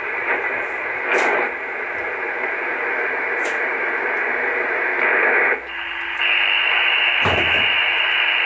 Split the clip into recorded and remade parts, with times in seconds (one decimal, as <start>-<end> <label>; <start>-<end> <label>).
0.0-4.9 remade; 4.9-6.8 recorded; 6.8-8.5 remade